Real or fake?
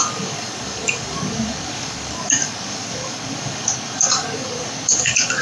fake